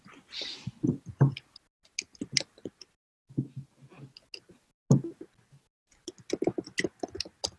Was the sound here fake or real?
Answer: real